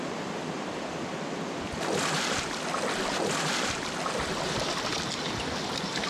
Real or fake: fake